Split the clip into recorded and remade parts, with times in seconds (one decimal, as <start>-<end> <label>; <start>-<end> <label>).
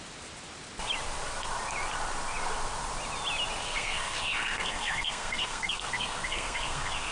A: 0.0-3.6 recorded; 3.6-7.1 remade